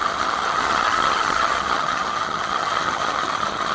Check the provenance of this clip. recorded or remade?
remade